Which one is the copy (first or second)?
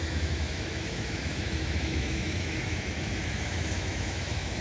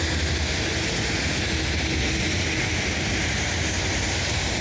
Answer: first